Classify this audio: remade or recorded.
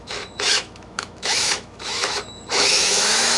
remade